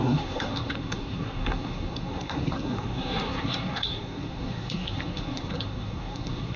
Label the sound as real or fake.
fake